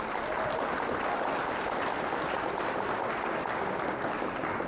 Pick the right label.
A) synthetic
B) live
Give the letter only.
B